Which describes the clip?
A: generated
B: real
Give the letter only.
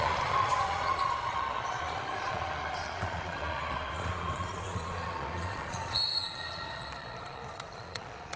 A